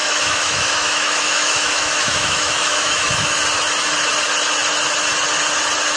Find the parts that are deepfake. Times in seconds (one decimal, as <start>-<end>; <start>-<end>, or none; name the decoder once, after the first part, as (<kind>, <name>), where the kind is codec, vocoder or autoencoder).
0.0-3.4 (autoencoder, DAC-VAE)